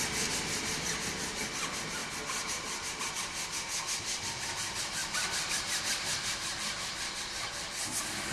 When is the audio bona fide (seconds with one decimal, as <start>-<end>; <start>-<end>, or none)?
0.0-8.3